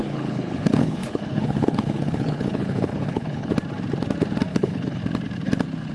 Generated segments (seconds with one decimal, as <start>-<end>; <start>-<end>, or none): 0.0-3.5; 4.5-5.0